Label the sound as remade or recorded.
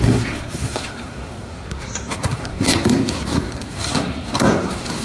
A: remade